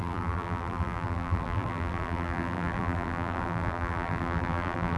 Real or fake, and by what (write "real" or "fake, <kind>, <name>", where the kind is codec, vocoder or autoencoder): fake, vocoder, BigVGAN v2